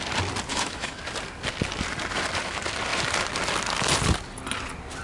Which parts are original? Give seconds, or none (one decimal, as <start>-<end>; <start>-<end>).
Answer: 0.0-0.5; 1.0-5.0